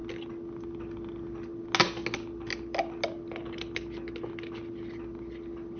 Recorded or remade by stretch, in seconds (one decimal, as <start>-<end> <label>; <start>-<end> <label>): 0.0-5.8 recorded